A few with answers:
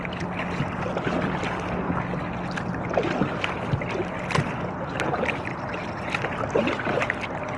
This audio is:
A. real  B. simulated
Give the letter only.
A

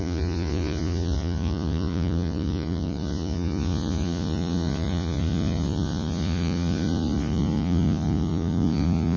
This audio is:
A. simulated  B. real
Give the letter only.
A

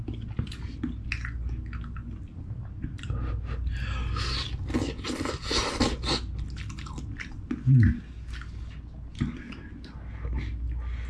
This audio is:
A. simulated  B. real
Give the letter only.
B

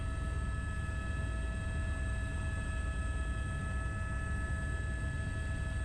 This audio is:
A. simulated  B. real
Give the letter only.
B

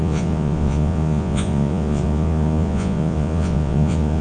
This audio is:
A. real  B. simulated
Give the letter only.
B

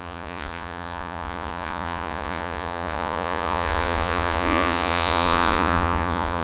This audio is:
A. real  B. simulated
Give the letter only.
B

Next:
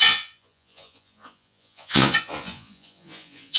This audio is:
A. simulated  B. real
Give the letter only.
A